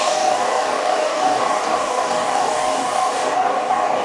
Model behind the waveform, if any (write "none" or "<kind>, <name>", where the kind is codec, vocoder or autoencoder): codec, DAC